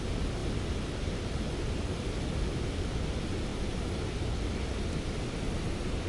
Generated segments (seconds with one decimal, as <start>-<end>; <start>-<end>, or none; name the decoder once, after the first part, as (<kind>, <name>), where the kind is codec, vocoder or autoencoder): none